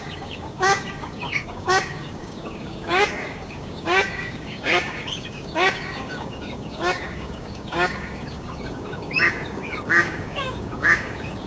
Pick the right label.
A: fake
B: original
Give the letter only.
A